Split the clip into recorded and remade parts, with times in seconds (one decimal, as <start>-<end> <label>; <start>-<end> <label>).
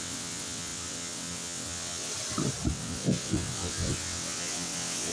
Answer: 0.0-2.1 remade; 2.1-2.7 recorded; 2.7-5.1 remade